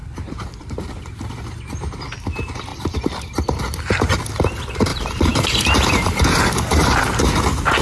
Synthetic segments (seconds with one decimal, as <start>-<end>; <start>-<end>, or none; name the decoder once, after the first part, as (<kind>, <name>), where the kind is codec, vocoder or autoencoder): 0.0-1.0 (vocoder, BigVGAN v2); 2.7-4.3; 4.9-7.0